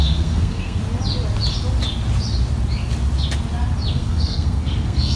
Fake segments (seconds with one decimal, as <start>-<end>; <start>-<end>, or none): 0.0-0.8; 3.9-5.2